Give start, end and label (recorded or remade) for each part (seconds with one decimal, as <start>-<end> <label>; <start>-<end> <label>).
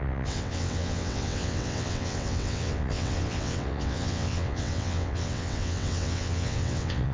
0.0-7.1 remade